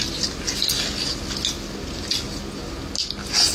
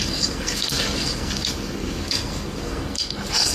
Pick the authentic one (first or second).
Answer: first